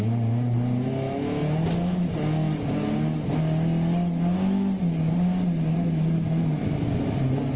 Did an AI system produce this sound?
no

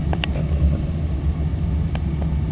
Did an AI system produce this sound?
no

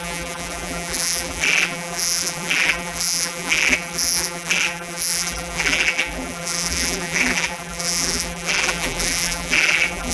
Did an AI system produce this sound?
yes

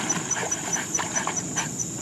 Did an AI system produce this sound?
yes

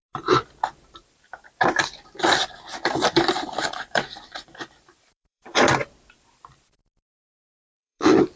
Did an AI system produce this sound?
yes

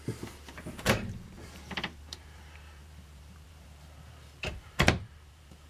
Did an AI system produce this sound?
yes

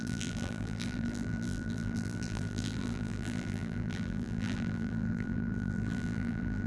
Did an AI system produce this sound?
yes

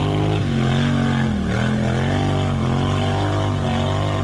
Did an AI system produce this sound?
no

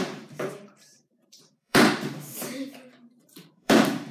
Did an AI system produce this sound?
yes